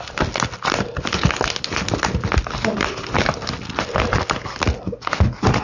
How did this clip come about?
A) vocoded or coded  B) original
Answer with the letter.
B